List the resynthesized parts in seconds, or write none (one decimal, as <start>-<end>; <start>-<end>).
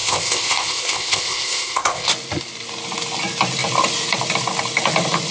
0.0-2.1